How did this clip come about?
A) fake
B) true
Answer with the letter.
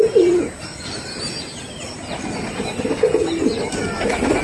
B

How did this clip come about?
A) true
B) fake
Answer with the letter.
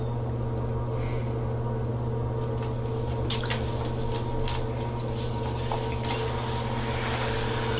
A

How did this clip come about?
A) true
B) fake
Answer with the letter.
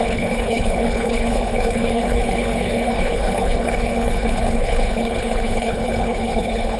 B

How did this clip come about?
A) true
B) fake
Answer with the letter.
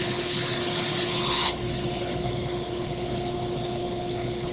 B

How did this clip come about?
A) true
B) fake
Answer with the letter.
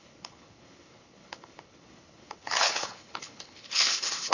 B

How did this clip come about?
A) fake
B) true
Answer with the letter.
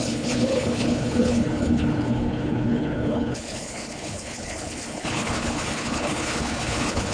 A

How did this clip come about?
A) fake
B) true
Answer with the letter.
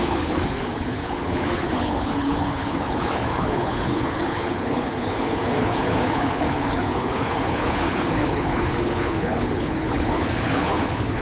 A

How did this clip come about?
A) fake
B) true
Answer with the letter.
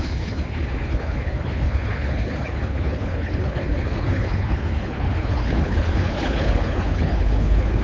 A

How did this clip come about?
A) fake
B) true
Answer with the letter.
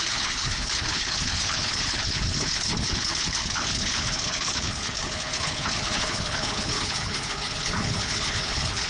A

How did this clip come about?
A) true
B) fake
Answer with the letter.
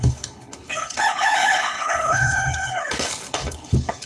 B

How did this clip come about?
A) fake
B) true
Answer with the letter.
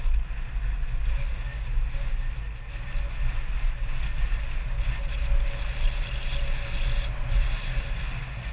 B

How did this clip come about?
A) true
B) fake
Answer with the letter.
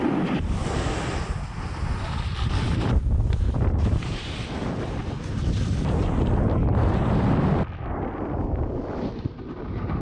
A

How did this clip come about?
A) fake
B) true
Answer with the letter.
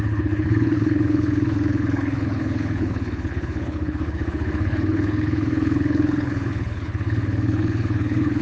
A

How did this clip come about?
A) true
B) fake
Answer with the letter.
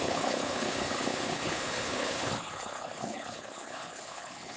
B